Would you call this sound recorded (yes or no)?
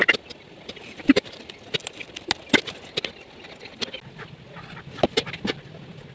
yes